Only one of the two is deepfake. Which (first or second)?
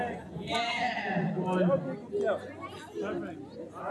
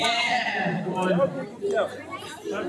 second